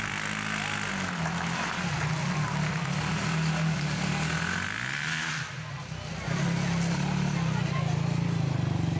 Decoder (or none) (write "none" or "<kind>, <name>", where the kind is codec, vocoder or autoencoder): none